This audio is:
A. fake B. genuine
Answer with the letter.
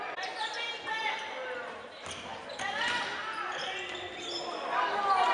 B